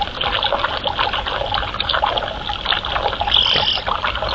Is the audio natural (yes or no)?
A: yes